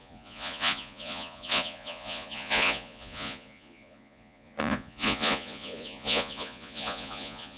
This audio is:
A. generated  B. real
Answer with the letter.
A